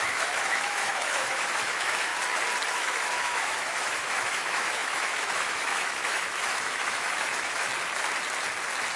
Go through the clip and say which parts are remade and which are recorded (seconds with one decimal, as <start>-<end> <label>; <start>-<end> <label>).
0.0-2.1 remade; 2.1-2.7 recorded; 2.7-7.7 remade; 7.7-9.0 recorded